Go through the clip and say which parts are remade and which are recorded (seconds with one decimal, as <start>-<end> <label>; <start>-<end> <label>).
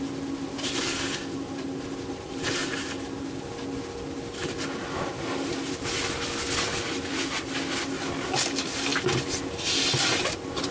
0.0-10.7 recorded